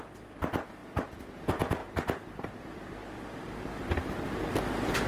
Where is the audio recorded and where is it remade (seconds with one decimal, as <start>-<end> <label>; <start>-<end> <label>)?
0.0-1.8 recorded; 1.8-5.1 remade